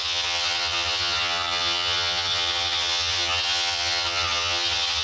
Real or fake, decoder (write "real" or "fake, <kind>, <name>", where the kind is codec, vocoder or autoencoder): fake, vocoder, HiFi-GAN